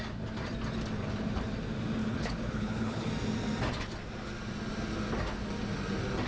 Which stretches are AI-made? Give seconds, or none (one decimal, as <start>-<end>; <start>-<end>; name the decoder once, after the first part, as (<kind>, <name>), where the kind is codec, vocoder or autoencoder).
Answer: 2.0-3.1 (codec, HILCodec)